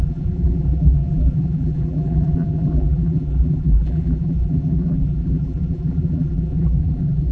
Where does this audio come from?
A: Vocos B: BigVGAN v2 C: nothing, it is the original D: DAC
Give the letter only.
B